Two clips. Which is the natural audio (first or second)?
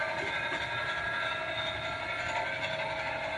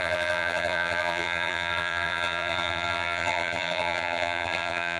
first